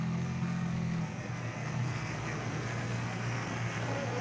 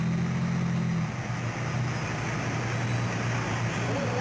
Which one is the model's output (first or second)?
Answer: first